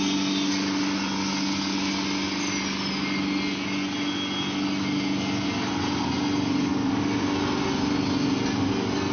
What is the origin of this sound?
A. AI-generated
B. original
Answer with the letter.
B